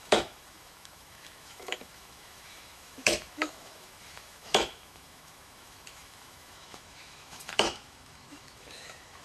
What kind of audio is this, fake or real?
fake